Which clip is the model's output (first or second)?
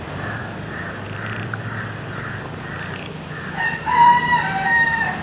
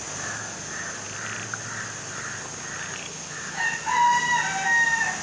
first